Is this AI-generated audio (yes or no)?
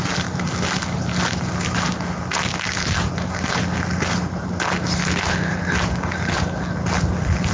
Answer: no